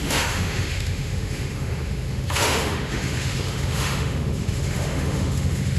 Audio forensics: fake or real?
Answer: fake